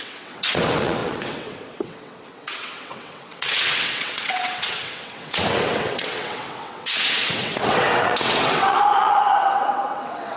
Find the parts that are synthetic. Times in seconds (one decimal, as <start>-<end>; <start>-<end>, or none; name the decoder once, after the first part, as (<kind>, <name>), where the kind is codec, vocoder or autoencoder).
0.0-10.4 (vocoder, WaveNeXt)